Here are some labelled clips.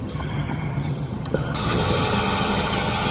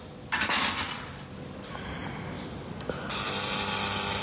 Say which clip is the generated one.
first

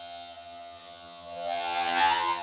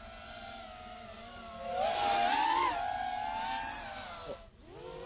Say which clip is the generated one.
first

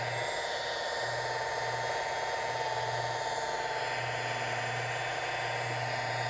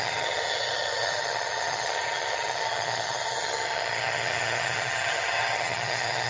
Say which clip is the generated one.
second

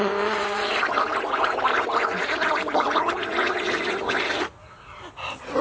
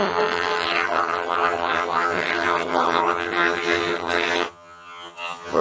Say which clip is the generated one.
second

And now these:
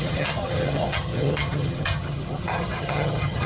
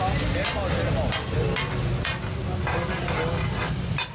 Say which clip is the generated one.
first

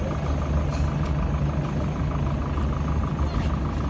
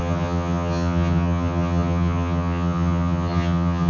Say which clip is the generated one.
second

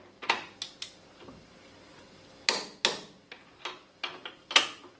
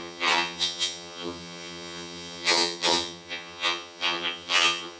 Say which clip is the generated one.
second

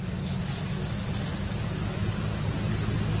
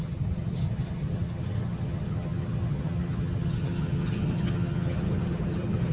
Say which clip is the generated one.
second